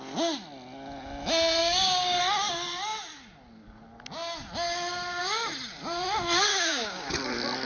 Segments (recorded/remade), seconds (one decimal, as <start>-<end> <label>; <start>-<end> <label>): 0.0-1.6 recorded; 1.6-2.2 remade; 2.2-6.5 recorded; 6.5-7.1 remade; 7.1-7.7 recorded